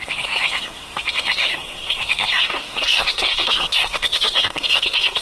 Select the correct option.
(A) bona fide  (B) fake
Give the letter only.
B